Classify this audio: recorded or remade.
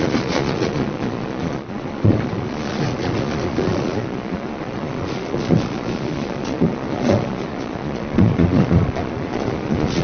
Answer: remade